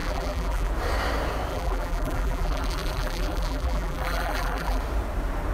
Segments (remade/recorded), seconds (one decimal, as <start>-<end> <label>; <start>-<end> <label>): 0.0-0.7 remade; 0.7-1.5 recorded; 1.5-4.8 remade; 4.8-5.5 recorded